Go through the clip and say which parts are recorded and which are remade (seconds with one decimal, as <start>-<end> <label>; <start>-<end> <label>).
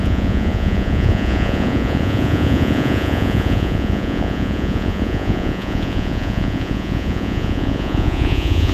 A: 0.0-8.7 remade